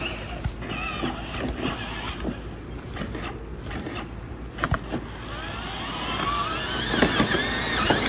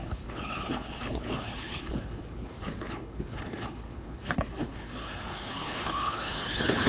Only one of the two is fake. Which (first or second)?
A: second